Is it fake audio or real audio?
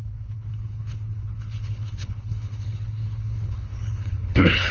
fake